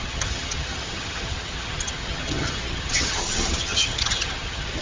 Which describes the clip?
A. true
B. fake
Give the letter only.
B